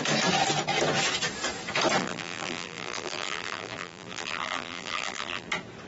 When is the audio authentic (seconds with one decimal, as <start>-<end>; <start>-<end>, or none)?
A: 0.0-2.0; 5.5-5.9